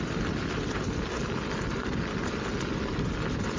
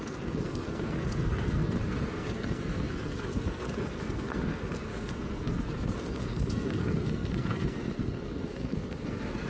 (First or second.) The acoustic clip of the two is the first